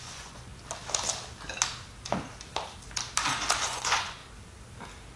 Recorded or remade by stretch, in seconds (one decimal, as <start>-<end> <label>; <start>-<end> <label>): 0.0-0.5 remade; 0.5-3.6 recorded; 3.6-4.2 remade; 4.2-5.2 recorded